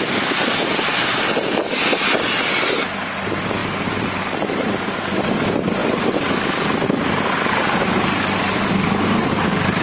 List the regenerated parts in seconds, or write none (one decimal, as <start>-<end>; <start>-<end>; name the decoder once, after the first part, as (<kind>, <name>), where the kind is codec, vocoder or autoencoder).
0.0-0.9 (vocoder, BigVGAN v2); 2.6-9.8